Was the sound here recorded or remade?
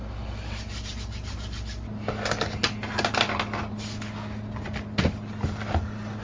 recorded